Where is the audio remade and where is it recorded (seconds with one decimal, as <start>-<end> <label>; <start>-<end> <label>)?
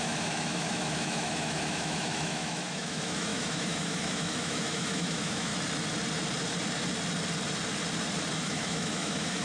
0.0-5.5 remade; 5.5-8.4 recorded; 8.4-9.4 remade